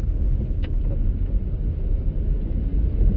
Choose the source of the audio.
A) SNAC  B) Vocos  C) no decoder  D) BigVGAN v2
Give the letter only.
C